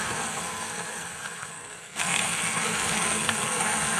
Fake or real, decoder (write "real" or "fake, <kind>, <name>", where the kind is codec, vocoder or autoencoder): fake, codec, SNAC